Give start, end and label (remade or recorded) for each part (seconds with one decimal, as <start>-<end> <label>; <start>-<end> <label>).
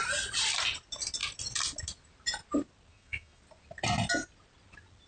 0.0-2.9 recorded; 2.9-3.4 remade; 3.4-5.1 recorded